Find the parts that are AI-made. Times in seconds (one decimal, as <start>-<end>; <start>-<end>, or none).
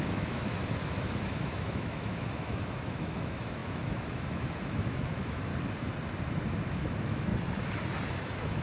0.0-5.5; 6.7-7.3; 8.1-8.6